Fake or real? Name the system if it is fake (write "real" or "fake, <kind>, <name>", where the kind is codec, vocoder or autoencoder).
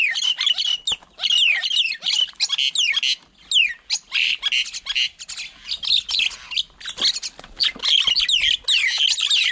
real